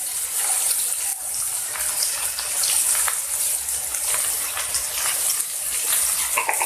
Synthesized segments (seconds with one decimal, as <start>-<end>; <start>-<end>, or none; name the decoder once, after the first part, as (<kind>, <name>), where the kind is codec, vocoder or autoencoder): 1.1-4.3 (vocoder, BigVGAN v2)